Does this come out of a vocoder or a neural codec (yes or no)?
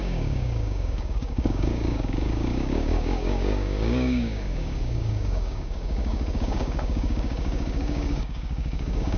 yes